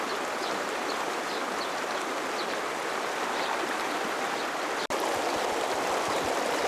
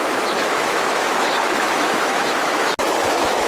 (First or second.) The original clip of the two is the first